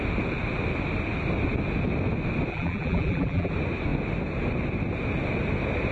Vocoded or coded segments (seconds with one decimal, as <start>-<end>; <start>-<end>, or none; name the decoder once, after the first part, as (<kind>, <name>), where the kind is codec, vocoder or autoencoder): 2.5-3.5 (vocoder, BigVGAN v2)